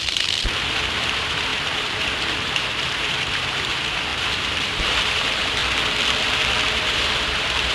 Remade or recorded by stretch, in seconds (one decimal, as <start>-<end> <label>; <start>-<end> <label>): 0.0-5.6 remade; 5.6-6.7 recorded; 6.7-7.7 remade